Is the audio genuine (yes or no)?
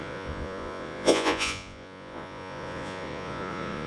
no